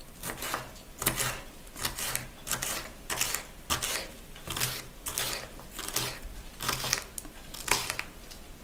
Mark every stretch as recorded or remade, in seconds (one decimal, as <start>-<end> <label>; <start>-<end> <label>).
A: 0.0-8.6 recorded